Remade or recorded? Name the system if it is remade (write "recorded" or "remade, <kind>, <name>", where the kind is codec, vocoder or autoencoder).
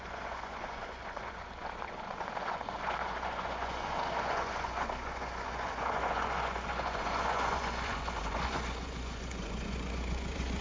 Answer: remade, vocoder, Vocos